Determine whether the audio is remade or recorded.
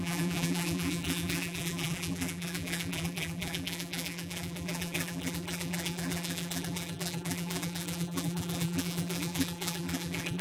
remade